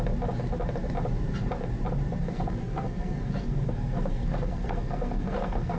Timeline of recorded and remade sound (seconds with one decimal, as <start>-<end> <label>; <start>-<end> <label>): 0.0-2.2 recorded; 2.2-5.8 remade